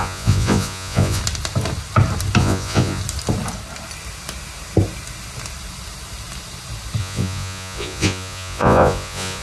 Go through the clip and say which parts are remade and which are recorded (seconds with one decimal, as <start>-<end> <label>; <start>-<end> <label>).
0.0-1.2 remade; 1.2-2.4 recorded; 2.4-3.0 remade; 3.0-7.0 recorded; 7.0-9.4 remade